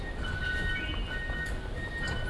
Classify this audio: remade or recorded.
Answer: recorded